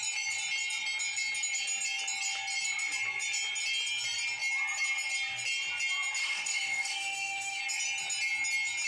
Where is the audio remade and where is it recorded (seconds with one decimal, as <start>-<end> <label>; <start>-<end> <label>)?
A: 0.0-6.2 recorded; 6.2-7.6 remade; 7.6-8.9 recorded